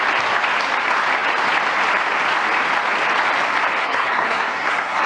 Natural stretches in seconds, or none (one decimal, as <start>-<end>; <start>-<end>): 0.0-3.8